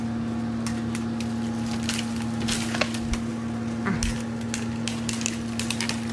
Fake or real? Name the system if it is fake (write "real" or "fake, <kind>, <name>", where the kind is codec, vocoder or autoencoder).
real